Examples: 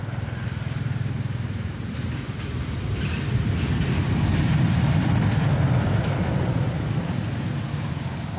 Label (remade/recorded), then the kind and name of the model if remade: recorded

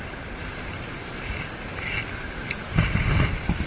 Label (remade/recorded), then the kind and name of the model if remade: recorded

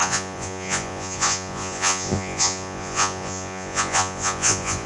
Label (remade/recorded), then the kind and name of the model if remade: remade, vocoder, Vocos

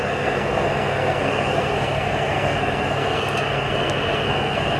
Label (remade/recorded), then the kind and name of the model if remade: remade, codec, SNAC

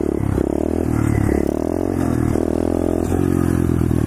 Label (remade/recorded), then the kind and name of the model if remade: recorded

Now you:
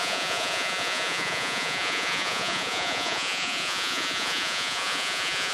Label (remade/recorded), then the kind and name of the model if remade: remade, vocoder, Vocos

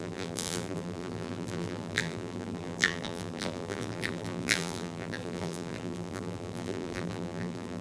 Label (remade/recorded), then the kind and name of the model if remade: remade, vocoder, BigVGAN v2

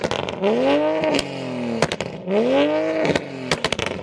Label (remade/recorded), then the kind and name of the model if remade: recorded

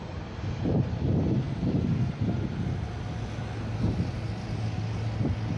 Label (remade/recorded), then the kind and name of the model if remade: recorded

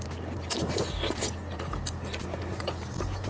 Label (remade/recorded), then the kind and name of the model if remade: recorded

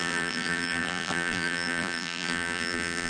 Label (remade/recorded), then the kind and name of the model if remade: remade, vocoder, BigVGAN v2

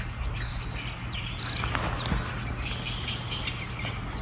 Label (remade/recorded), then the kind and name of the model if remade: recorded